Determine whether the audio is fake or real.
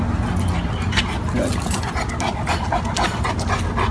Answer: real